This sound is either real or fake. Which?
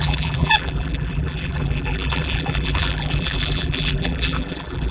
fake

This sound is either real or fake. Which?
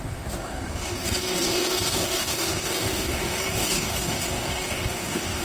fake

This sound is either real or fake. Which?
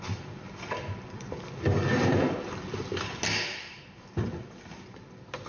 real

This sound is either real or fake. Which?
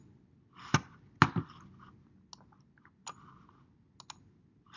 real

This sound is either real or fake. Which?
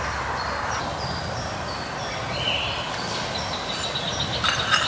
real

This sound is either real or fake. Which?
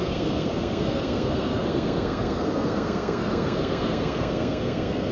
fake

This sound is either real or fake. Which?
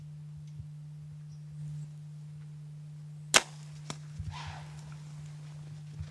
real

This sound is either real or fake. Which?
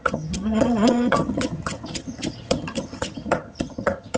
fake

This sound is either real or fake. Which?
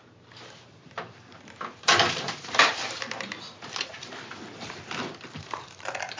fake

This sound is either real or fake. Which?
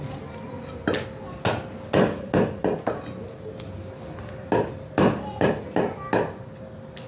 real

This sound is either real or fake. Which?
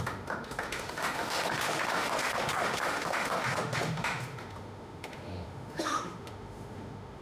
fake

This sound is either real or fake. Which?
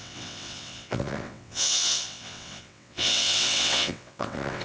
fake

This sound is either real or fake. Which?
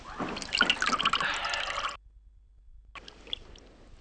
real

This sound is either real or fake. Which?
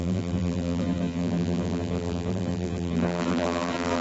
fake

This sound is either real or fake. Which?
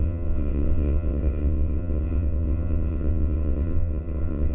fake